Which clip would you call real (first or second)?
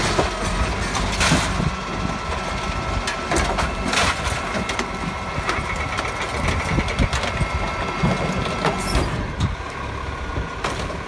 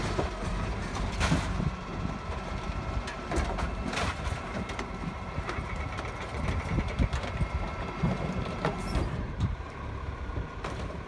first